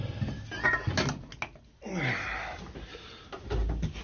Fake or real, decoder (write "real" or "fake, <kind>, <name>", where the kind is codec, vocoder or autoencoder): real